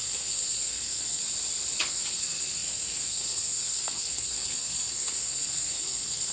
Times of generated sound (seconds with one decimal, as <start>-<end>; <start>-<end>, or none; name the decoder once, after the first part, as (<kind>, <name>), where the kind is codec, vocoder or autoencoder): 0.0-1.2 (codec, SNAC); 1.8-6.3